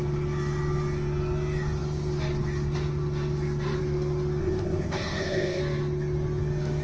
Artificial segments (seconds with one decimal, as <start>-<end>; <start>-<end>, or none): 4.4-5.6

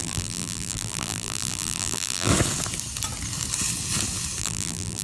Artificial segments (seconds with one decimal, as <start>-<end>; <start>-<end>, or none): 0.0-2.3; 4.4-5.0

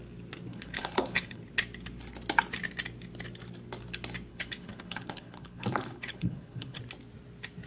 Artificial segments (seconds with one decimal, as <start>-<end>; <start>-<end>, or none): 0.5-1.4; 4.3-6.8

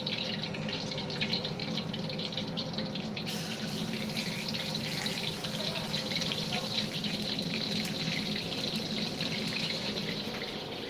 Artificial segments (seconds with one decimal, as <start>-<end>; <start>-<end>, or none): 5.9-6.8